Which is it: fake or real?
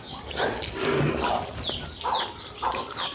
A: real